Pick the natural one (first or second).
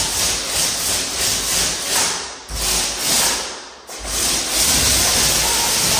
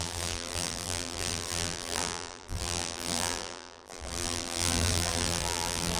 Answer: first